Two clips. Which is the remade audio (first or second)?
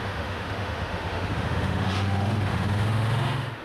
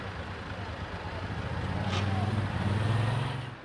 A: first